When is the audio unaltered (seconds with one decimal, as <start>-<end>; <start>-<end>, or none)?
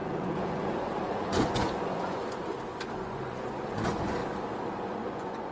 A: 2.4-3.0; 4.2-4.9